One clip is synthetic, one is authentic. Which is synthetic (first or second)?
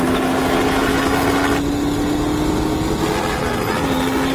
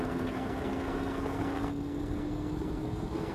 second